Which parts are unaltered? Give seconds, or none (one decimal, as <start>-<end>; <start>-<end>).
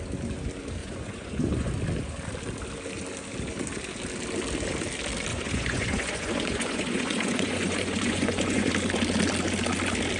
0.0-0.8; 1.7-5.3; 8.7-10.2